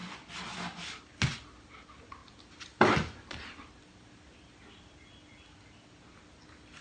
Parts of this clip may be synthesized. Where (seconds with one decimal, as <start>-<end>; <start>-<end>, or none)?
none